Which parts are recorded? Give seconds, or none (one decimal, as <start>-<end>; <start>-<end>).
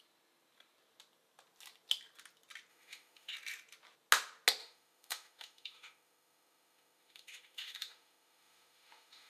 0.0-2.7; 3.3-4.6